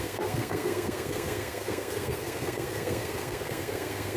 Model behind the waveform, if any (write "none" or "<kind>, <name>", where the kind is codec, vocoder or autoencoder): codec, SNAC